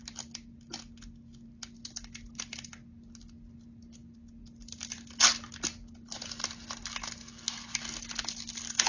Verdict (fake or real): real